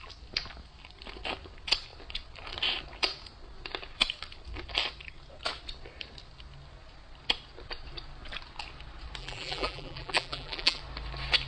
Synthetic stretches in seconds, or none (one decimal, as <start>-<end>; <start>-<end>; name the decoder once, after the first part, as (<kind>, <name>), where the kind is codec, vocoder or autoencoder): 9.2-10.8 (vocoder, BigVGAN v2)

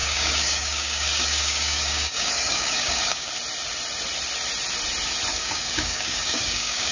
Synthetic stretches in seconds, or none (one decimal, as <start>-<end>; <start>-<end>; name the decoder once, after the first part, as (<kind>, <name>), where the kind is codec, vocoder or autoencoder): 0.0-3.3 (codec, DAC); 5.3-6.9

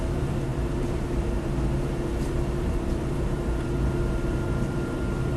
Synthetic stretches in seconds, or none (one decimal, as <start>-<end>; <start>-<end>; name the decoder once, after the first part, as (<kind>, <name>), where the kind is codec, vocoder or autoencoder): 0.0-5.4 (vocoder, BigVGAN v2)

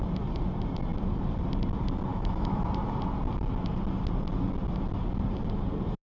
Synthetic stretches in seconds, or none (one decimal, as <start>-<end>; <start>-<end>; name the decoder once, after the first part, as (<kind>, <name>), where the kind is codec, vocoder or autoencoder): 2.1-2.6 (autoencoder, DAC-VAE)

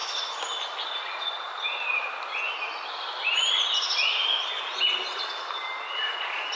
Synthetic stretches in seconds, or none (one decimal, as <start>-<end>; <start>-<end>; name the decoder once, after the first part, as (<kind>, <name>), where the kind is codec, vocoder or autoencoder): none

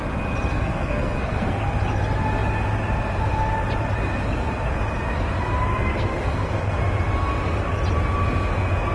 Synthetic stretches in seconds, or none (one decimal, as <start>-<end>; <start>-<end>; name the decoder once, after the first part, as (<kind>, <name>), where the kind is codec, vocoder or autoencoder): 0.5-1.6 (codec, SNAC); 5.9-6.8